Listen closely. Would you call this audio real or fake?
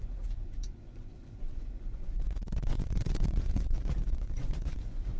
fake